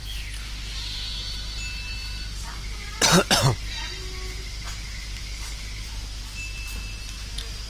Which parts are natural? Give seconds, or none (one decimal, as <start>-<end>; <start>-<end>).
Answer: 0.0-7.7